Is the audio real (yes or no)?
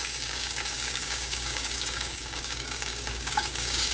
no